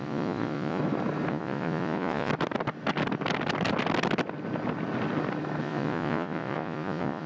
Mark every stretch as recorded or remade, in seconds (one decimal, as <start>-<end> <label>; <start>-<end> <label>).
0.0-0.8 remade; 0.8-1.3 recorded; 1.3-2.3 remade; 2.3-5.6 recorded; 5.6-7.3 remade